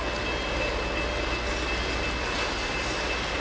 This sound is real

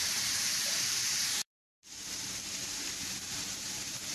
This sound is fake